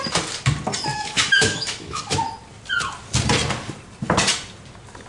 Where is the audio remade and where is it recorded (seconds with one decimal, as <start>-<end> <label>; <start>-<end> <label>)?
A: 0.0-0.9 recorded; 0.9-2.0 remade; 2.0-5.1 recorded